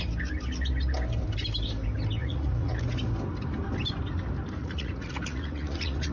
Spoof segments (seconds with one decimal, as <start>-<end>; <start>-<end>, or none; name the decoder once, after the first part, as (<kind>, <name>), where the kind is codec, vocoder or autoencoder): 2.2-2.8 (vocoder, Vocos); 4.6-6.1